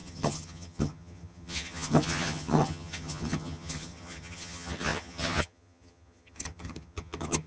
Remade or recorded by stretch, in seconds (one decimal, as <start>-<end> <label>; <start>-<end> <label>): 0.0-7.5 remade